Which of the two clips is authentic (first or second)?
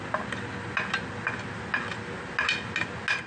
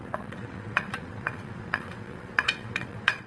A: first